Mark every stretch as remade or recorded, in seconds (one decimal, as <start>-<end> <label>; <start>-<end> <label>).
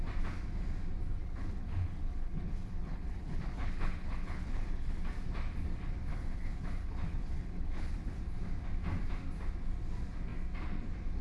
0.0-1.2 recorded; 1.2-5.0 remade; 5.0-6.1 recorded; 6.1-8.2 remade; 8.2-11.2 recorded